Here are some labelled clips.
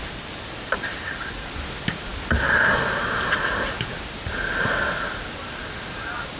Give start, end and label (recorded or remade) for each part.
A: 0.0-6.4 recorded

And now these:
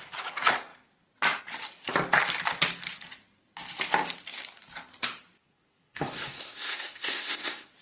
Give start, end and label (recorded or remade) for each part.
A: 0.0-5.4 recorded; 5.4-7.8 remade

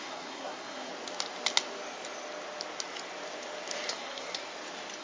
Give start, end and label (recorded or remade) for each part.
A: 0.0-0.9 remade; 0.9-3.9 recorded; 3.9-4.4 remade; 4.4-5.0 recorded

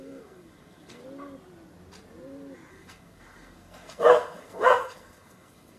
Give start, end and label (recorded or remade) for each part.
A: 0.0-1.0 remade; 1.0-2.7 recorded; 2.7-5.8 remade